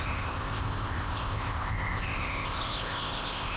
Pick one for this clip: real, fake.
fake